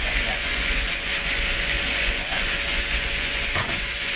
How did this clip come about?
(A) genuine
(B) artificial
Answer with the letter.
B